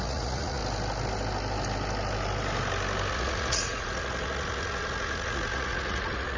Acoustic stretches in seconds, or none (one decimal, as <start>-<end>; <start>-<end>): 0.6-3.1